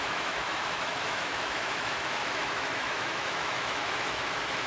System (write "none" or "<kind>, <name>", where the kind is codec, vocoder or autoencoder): autoencoder, DAC-VAE